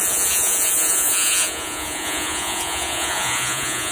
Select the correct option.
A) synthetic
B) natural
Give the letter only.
A